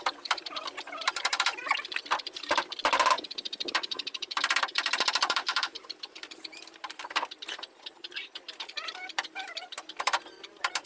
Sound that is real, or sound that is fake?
fake